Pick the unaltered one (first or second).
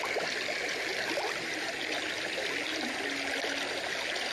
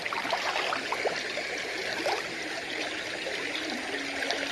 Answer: first